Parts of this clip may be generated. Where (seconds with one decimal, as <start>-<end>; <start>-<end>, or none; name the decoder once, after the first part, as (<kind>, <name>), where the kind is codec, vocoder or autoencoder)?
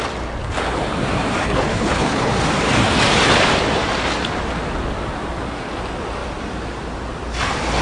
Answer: 1.4-2.3 (codec, HILCodec)